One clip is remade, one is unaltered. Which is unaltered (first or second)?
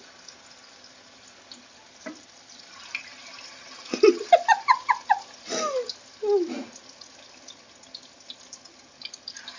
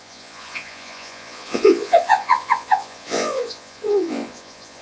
first